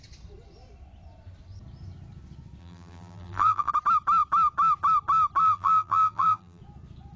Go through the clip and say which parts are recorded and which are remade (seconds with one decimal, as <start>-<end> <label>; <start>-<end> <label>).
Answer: 0.0-2.6 recorded; 2.6-3.7 remade; 3.7-5.4 recorded; 5.4-6.6 remade; 6.6-7.2 recorded